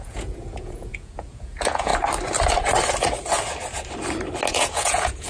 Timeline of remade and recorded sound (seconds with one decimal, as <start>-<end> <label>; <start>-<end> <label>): 0.0-1.9 remade; 1.9-4.5 recorded; 4.5-5.3 remade